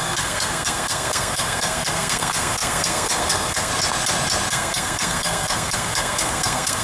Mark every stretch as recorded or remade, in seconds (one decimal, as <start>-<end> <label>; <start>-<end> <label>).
0.0-3.7 remade; 3.7-4.5 recorded; 4.5-6.8 remade